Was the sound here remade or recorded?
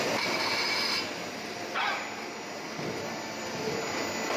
recorded